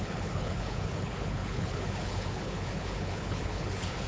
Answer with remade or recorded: remade